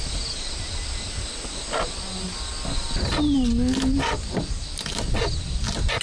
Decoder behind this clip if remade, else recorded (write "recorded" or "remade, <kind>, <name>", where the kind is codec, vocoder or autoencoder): recorded